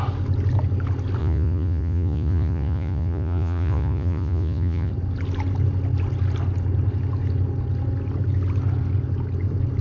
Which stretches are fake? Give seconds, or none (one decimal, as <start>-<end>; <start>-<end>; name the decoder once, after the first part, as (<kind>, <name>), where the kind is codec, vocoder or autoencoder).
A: 1.2-4.9 (vocoder, Vocos)